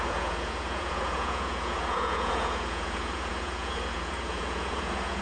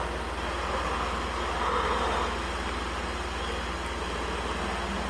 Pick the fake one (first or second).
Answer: first